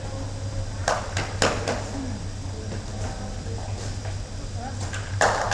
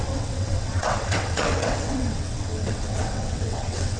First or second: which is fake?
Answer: second